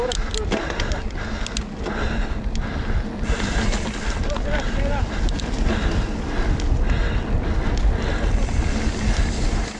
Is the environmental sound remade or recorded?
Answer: recorded